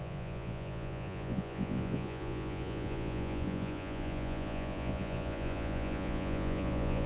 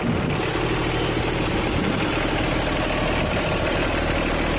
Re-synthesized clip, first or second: first